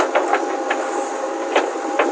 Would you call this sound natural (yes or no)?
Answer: yes